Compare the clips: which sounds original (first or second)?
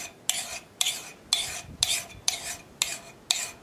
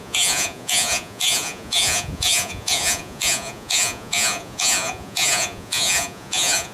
first